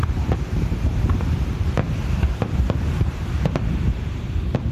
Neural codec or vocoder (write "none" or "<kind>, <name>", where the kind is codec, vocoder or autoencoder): vocoder, BigVGAN v2